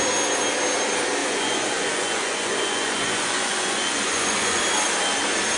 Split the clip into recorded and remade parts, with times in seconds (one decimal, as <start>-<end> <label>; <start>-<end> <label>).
0.0-1.2 recorded; 1.2-4.6 remade; 4.6-5.6 recorded